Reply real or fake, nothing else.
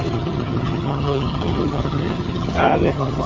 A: fake